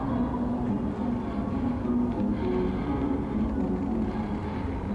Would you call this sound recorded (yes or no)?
yes